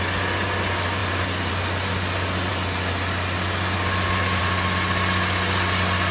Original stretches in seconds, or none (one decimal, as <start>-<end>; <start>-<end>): 0.0-6.1